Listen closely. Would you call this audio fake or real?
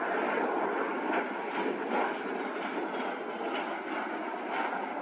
real